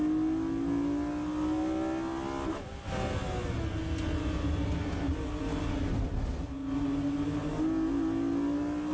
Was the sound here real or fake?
real